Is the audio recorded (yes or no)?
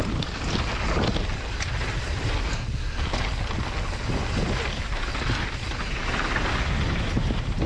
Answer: yes